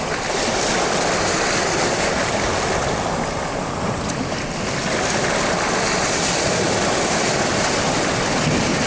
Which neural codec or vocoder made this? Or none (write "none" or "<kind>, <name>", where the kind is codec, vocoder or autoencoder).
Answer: none